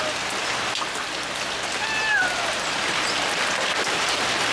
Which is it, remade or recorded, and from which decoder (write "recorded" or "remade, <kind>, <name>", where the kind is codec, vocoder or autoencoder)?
recorded